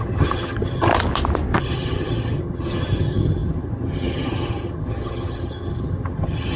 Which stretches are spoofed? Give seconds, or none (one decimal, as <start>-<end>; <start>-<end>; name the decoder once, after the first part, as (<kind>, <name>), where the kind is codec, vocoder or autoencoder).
0.0-0.9 (vocoder, HiFi-GAN); 1.6-6.6